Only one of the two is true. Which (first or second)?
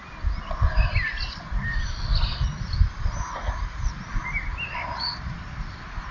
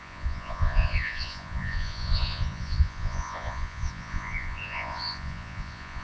first